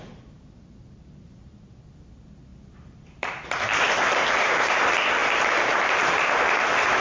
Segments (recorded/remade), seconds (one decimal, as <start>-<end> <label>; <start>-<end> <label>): 0.0-2.5 recorded; 2.5-4.8 remade; 4.8-7.0 recorded